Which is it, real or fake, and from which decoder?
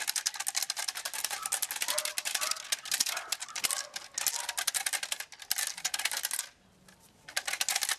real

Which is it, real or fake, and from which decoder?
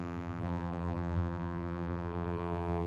fake, vocoder, BigVGAN v2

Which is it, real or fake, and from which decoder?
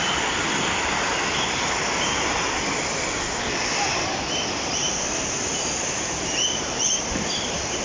fake, vocoder, BigVGAN v2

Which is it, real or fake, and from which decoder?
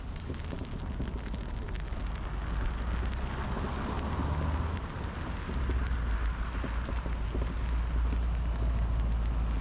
real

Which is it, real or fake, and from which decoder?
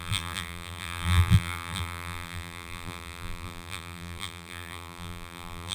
fake, vocoder, BigVGAN v2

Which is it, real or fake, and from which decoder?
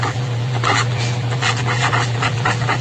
fake, vocoder, BigVGAN v2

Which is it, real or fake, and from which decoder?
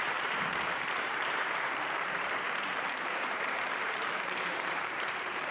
fake, vocoder, BigVGAN v2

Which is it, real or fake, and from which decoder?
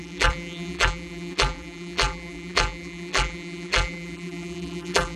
fake, vocoder, BigVGAN v2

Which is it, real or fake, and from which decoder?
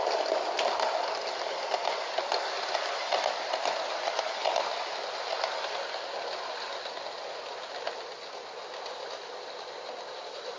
real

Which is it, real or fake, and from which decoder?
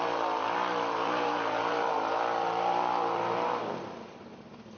fake, vocoder, BigVGAN v2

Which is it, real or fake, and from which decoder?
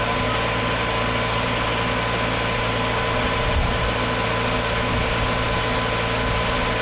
real